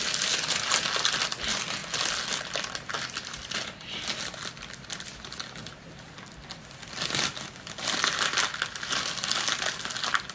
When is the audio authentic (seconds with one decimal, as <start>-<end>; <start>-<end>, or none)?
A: 0.0-10.3